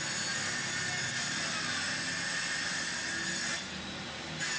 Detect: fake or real real